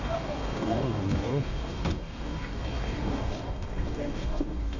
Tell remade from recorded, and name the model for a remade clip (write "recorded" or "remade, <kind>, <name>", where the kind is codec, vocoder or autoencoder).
remade, codec, DAC